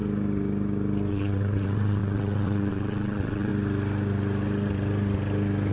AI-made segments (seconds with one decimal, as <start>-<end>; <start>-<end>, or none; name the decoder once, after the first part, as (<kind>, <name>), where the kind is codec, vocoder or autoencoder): 1.1-3.5 (vocoder, WaveNeXt)

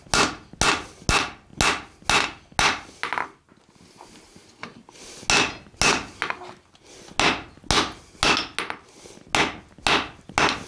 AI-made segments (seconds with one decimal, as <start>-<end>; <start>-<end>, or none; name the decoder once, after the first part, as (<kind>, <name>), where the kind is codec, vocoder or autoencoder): none

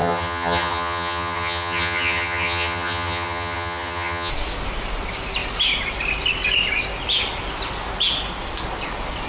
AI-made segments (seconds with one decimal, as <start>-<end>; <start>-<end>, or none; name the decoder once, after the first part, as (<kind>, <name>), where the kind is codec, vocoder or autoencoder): 0.0-4.3 (vocoder, HiFi-GAN)

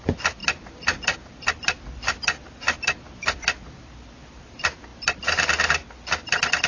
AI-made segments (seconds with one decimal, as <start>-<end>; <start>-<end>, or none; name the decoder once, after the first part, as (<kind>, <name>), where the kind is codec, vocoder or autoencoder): none